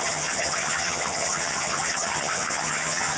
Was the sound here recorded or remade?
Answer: remade